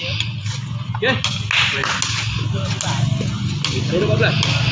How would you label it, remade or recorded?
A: recorded